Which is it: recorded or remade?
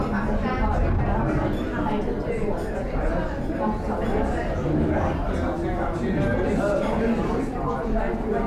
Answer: recorded